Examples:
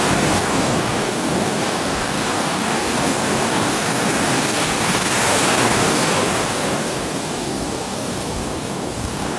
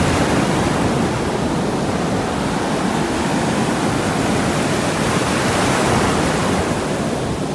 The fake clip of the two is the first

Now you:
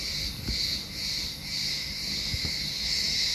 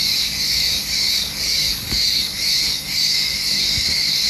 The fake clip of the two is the second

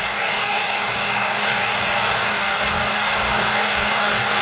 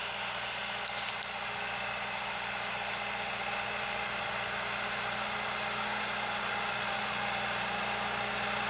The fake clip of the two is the first